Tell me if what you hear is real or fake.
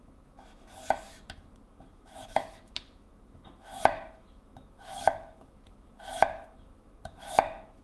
fake